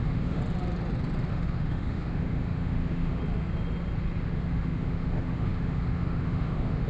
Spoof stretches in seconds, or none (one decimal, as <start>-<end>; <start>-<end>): 0.0-0.4; 1.3-3.2; 4.2-6.9